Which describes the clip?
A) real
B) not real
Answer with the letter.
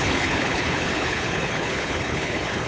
B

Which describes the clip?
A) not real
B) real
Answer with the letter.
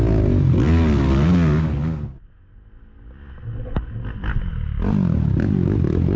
B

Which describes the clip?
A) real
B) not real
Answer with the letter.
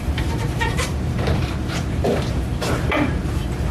B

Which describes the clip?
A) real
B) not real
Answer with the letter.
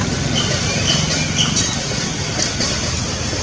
A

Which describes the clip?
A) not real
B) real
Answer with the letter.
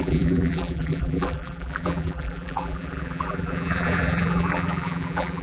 A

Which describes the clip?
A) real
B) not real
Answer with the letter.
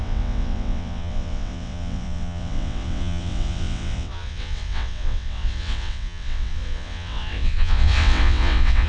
B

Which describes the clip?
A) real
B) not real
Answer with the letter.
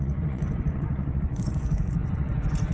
B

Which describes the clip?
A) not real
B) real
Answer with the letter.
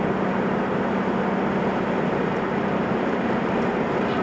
B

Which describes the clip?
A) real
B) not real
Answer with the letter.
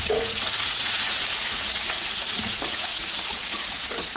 B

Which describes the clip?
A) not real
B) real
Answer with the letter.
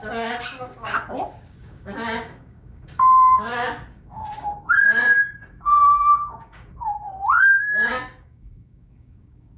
A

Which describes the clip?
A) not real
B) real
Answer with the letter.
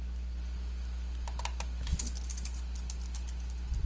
B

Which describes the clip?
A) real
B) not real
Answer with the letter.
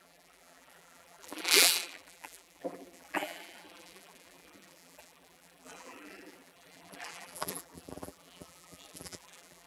B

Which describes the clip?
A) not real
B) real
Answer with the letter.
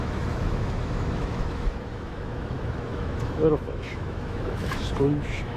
A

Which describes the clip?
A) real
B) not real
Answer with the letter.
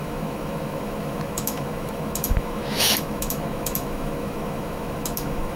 B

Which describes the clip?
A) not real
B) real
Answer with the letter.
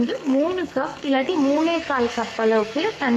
A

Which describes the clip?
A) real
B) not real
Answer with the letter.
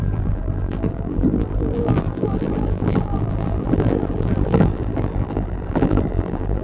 B